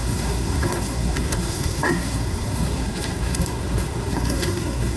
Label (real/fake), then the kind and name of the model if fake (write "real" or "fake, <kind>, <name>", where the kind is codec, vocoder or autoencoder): fake, codec, SNAC